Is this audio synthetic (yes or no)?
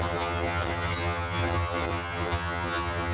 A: yes